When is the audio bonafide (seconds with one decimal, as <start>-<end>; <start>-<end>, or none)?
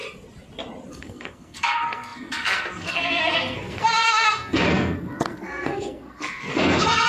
0.0-0.9